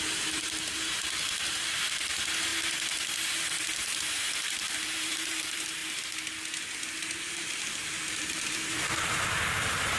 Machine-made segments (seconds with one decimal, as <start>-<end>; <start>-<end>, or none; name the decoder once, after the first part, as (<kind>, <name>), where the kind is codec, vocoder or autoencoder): 0.0-2.5 (vocoder, BigVGAN v2); 4.0-5.8; 7.3-10.0